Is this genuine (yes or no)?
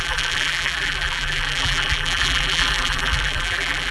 no